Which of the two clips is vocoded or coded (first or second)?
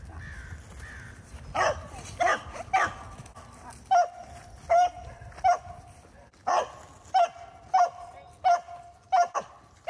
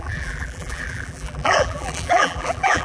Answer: second